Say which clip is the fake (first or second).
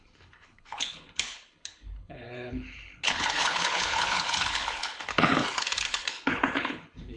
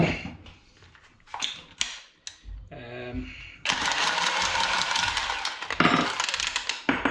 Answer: first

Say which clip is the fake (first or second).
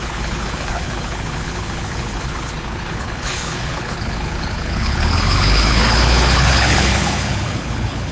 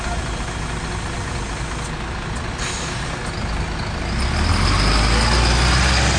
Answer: first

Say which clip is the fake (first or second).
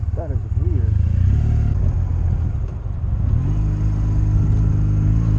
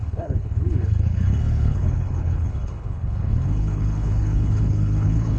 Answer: second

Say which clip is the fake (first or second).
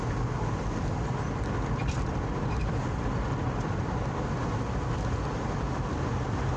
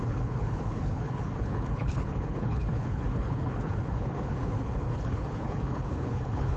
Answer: second